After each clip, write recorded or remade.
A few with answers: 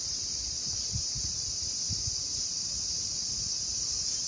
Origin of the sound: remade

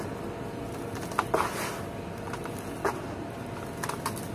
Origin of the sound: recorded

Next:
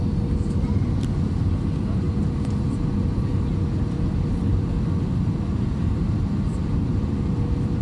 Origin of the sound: recorded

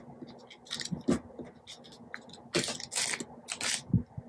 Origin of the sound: recorded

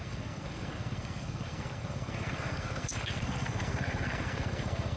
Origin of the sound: remade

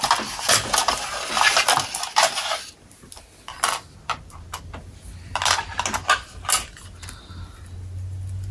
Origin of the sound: recorded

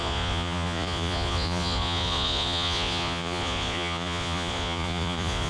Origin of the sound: remade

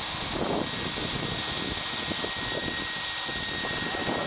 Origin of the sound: recorded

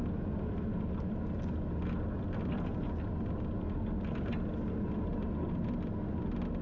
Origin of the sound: recorded